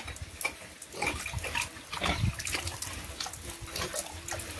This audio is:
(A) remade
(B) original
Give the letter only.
B